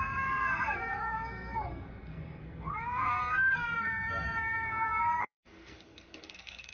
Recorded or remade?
remade